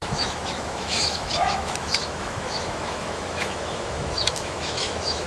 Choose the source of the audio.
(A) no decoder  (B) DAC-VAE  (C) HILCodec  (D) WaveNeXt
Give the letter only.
B